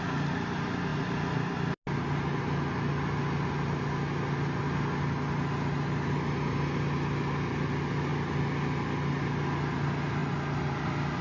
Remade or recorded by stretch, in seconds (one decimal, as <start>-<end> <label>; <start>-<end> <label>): 0.0-11.2 recorded